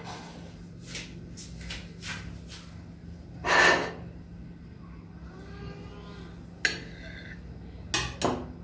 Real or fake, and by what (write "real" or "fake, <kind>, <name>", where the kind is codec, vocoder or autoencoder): real